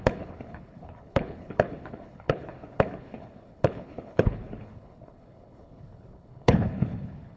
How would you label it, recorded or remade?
remade